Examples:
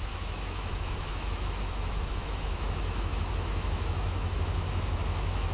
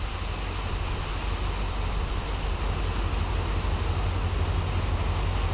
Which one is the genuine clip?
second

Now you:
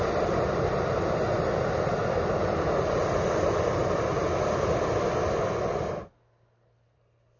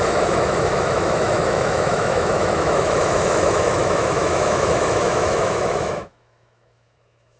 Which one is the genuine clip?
first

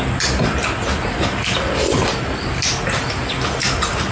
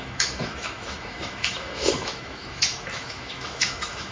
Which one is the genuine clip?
first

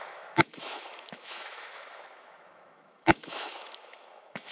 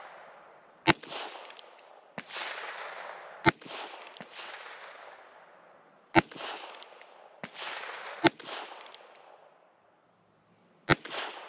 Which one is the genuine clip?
second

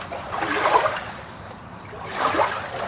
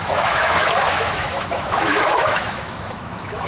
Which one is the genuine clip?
first